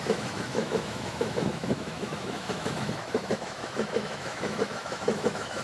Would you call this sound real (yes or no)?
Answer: no